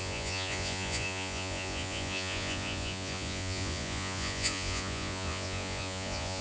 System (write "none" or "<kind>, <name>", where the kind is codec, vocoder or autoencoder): vocoder, Vocos